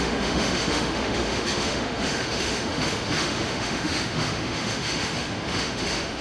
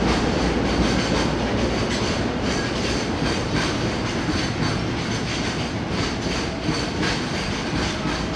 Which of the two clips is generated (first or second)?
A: first